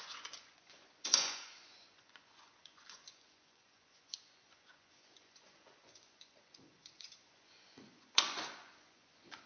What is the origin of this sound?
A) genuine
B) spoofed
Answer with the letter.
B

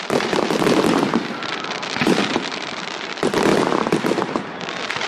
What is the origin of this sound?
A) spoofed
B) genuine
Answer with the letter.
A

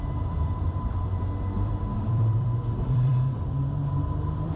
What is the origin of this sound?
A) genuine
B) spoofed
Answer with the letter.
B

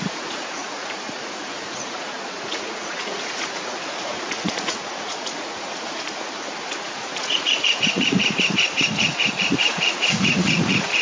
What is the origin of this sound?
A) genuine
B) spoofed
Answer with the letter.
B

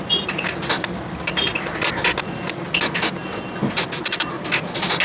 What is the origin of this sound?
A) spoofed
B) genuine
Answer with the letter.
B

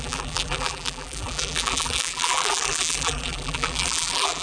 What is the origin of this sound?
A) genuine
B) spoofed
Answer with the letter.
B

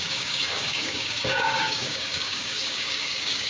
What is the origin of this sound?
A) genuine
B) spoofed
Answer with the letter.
B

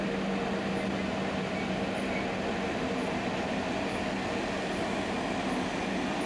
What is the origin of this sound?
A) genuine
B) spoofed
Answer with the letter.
A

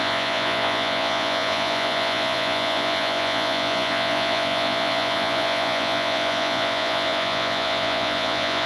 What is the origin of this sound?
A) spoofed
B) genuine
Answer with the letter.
A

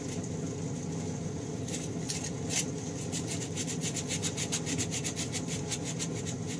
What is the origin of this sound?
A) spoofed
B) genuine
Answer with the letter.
A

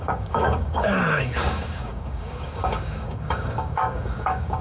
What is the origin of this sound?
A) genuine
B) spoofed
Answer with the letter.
B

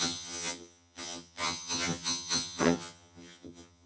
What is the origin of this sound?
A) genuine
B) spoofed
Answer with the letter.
B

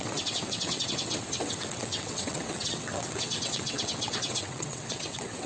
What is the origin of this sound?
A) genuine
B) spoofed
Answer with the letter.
B